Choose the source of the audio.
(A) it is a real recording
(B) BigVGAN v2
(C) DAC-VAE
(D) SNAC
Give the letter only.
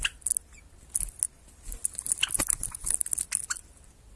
A